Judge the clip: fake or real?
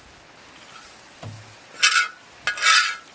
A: real